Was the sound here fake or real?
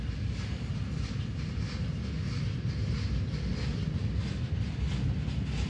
real